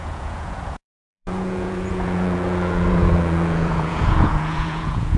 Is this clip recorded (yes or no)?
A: no